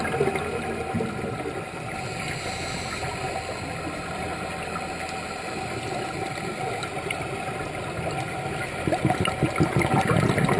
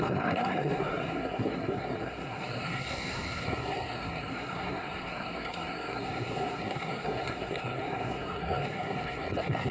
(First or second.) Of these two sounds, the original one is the first